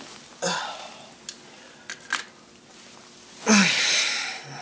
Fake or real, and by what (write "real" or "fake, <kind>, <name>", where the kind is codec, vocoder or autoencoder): real